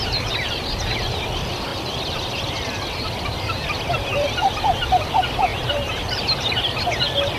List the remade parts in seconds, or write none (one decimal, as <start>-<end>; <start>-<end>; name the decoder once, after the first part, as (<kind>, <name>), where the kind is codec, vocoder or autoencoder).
1.7-5.1 (vocoder, BigVGAN v2)

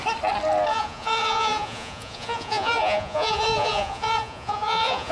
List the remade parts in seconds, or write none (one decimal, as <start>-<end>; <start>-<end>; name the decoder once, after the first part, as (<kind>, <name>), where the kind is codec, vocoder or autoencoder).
0.7-5.1 (vocoder, Vocos)

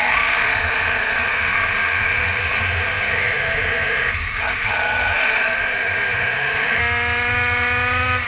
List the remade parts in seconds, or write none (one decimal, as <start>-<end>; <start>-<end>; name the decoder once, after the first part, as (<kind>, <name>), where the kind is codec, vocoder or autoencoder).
0.0-6.8 (autoencoder, DAC-VAE)

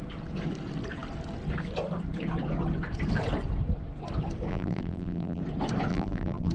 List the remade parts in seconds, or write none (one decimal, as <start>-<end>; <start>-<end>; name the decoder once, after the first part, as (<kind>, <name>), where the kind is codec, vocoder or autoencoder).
4.5-5.4 (vocoder, BigVGAN v2); 5.9-6.5

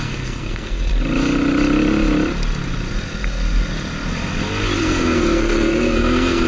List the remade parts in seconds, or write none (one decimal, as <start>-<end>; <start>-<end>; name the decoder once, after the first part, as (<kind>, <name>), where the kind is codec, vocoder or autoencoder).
0.0-0.9 (codec, SNAC); 4.8-6.5

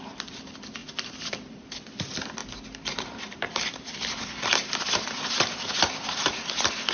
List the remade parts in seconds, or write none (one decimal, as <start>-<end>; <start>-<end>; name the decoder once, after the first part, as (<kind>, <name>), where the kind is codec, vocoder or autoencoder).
0.8-1.5 (vocoder, BigVGAN v2); 2.4-6.5